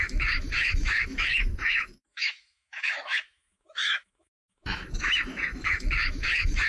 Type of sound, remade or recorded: remade